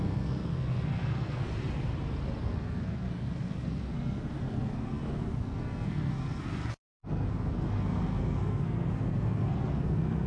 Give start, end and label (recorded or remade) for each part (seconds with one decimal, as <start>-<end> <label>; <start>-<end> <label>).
0.0-1.5 remade; 1.5-2.4 recorded; 2.4-10.3 remade